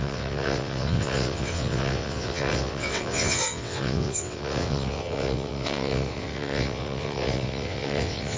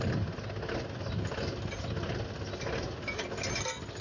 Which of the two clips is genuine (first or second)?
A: second